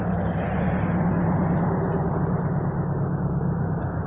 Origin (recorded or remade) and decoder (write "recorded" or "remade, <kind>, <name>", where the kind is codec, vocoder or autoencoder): recorded